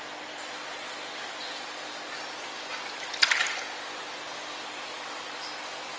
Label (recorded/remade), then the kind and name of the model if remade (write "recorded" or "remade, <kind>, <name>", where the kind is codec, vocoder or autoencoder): recorded